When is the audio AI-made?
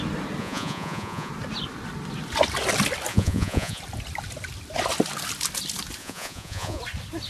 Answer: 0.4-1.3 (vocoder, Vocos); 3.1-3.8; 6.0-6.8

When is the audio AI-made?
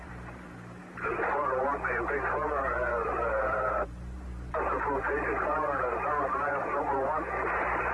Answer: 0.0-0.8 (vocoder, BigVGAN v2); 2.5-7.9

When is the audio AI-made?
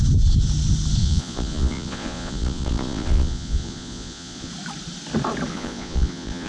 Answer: 1.0-4.5 (vocoder, Vocos); 5.5-6.5